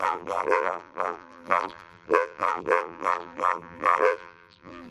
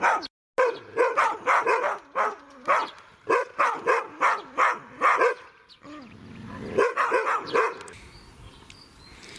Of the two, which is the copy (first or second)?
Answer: first